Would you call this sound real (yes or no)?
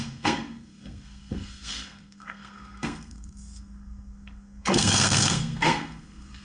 no